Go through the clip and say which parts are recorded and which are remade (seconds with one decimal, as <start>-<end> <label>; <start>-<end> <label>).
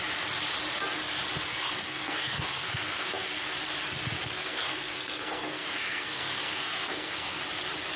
0.0-1.5 recorded; 1.5-3.3 remade; 3.3-4.4 recorded; 4.4-7.4 remade; 7.4-8.0 recorded